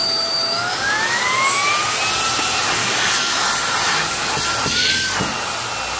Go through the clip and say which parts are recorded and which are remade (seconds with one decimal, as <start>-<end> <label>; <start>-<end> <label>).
0.0-1.7 remade; 1.7-2.8 recorded; 2.8-3.5 remade; 3.5-6.0 recorded